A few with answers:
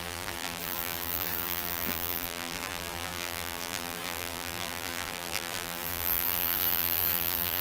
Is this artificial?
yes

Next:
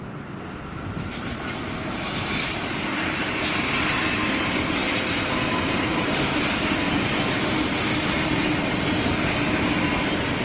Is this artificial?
no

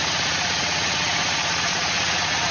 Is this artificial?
yes